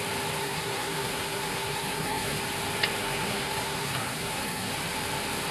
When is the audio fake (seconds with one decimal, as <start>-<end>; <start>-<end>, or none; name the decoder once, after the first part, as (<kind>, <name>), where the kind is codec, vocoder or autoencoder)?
0.4-2.4 (codec, SNAC); 3.0-4.7